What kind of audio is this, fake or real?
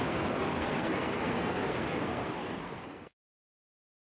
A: fake